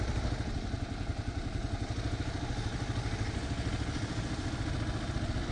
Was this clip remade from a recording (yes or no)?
no